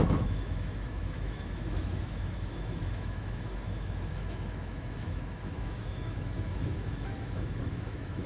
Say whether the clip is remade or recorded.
remade